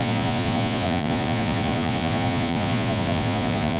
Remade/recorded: remade